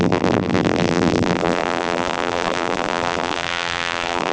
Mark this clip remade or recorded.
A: remade